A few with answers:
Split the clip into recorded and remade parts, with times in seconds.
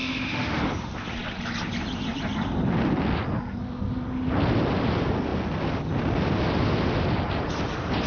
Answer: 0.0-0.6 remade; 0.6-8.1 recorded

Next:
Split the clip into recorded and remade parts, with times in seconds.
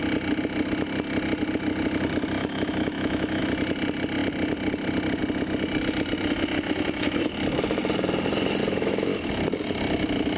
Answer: 0.0-2.4 recorded; 2.4-3.5 remade; 3.5-8.6 recorded; 8.6-9.3 remade; 9.3-10.4 recorded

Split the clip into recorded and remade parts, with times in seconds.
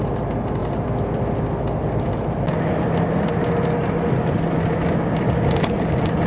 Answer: 0.0-6.3 recorded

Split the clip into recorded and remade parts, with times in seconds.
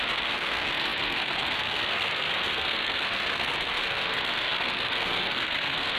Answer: 0.0-6.0 remade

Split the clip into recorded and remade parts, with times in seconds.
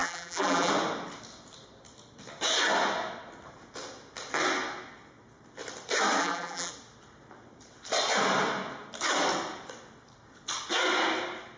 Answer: 0.0-0.7 remade; 0.7-6.2 recorded; 6.2-6.7 remade; 6.7-11.6 recorded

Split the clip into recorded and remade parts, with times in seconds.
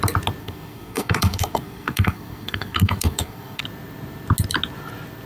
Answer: 0.0-0.4 recorded; 0.4-3.6 remade; 3.6-5.3 recorded